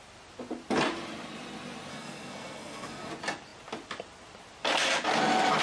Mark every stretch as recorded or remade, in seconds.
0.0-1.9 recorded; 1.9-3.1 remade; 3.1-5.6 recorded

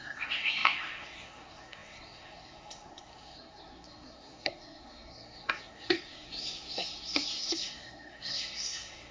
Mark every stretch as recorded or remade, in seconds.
0.0-9.1 remade